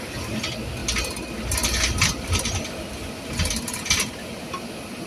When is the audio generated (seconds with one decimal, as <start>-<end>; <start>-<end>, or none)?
none